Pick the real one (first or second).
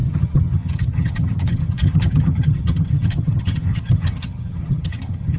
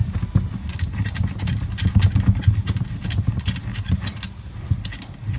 second